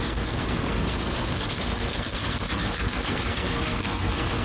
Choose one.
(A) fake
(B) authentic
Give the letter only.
A